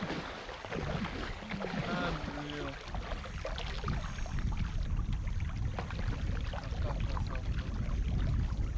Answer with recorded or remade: recorded